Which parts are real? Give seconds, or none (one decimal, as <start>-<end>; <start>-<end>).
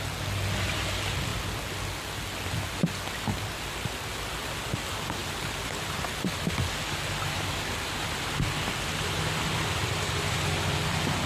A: 0.0-11.3